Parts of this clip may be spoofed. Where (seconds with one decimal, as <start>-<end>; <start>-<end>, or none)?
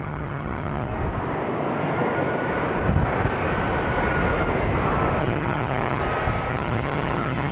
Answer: 0.0-0.9; 5.2-6.0; 6.5-7.5